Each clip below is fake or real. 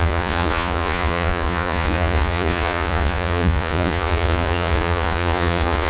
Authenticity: fake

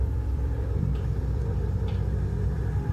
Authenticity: fake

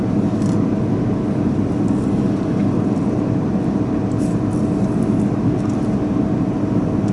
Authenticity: real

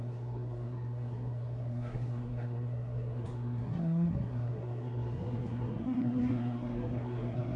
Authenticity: fake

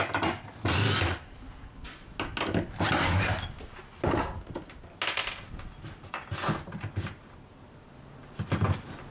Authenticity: real